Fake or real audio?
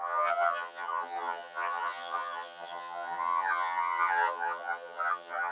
fake